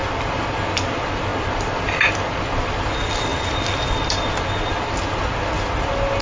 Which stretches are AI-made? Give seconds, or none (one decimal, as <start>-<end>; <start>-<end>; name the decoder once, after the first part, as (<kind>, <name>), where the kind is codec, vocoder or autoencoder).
none